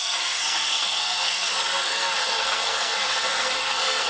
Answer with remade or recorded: remade